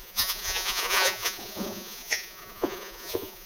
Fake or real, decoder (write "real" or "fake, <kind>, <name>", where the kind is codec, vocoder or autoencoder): fake, vocoder, Vocos